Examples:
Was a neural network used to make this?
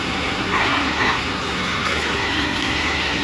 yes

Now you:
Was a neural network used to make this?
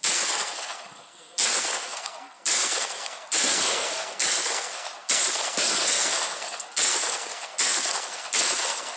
yes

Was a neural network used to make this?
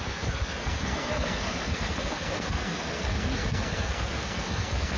yes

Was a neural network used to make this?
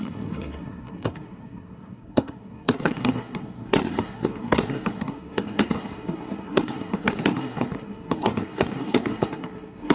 yes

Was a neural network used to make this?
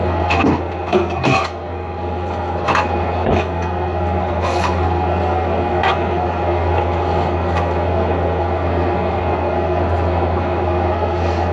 yes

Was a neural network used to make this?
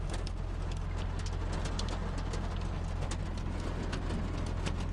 no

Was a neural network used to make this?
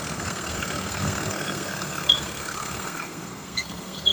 yes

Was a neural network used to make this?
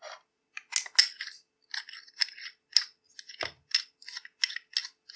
no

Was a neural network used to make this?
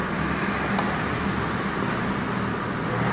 no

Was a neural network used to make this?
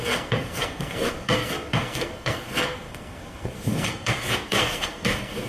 yes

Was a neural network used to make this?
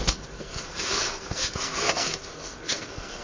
yes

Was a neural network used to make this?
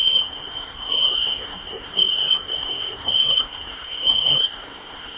yes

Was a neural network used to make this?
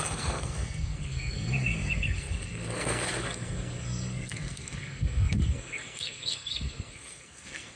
yes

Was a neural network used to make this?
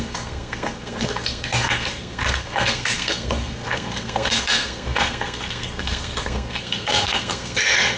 yes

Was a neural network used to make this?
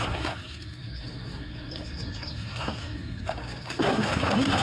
yes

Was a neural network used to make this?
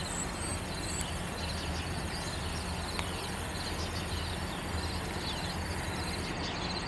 no